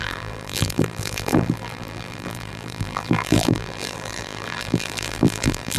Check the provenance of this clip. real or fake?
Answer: fake